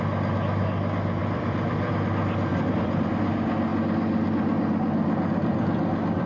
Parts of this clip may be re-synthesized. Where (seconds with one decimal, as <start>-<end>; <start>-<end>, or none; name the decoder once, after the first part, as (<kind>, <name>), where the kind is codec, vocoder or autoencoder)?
1.2-1.9 (vocoder, BigVGAN v2); 2.5-3.1

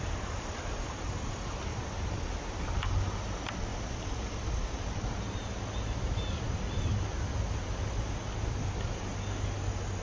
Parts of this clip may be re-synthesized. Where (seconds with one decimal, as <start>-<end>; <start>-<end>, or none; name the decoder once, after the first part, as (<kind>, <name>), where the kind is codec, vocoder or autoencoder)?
3.7-4.5 (vocoder, BigVGAN v2)

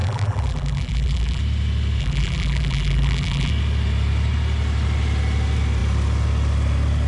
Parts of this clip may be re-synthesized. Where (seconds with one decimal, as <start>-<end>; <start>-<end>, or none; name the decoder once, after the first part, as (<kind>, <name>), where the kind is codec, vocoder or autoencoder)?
0.0-1.4 (vocoder, BigVGAN v2); 2.0-3.5

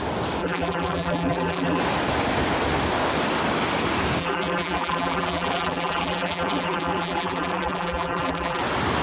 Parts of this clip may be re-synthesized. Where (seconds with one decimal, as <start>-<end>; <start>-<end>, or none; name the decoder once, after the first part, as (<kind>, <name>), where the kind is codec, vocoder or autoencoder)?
0.4-1.8 (vocoder, BigVGAN v2); 4.2-8.6

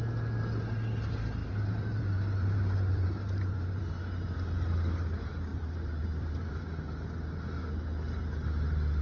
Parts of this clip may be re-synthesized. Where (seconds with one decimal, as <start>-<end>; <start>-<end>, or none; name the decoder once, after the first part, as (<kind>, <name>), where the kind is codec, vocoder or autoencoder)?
1.4-3.8 (vocoder, BigVGAN v2); 5.5-6.8

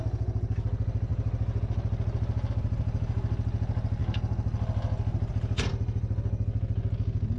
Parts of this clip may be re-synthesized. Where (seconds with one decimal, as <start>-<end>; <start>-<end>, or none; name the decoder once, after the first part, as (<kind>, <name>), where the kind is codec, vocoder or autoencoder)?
none